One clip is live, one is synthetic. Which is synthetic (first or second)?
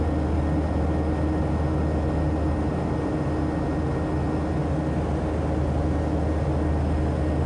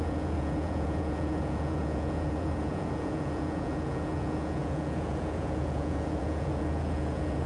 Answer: second